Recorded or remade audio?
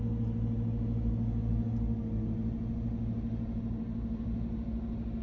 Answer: recorded